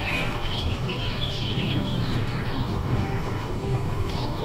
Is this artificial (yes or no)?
yes